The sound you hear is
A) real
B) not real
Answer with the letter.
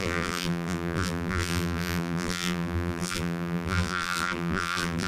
B